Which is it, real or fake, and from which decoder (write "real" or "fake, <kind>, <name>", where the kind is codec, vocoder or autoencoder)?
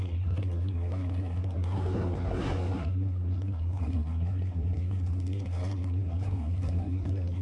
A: fake, codec, SNAC